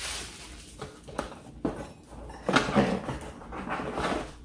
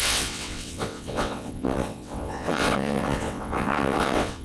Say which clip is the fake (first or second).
second